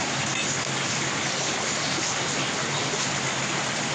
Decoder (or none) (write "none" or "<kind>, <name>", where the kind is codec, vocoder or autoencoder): none